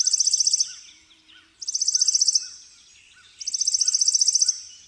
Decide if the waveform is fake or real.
real